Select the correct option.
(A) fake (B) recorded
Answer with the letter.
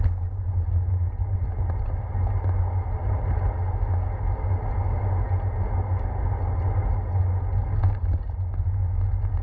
B